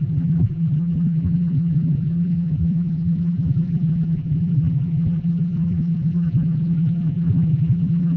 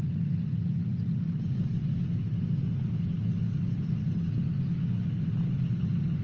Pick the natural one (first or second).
second